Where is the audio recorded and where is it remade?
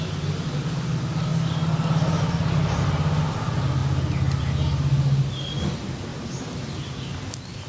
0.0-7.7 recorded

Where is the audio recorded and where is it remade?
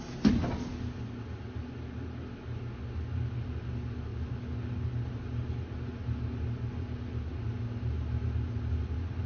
0.0-9.3 recorded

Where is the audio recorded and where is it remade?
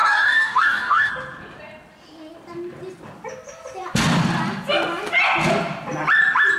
0.0-1.1 remade; 1.1-6.6 recorded